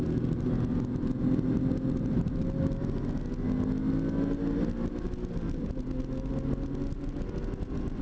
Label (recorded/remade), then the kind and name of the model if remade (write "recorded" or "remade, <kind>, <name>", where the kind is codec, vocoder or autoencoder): recorded